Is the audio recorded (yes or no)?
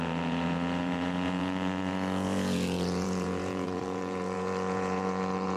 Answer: no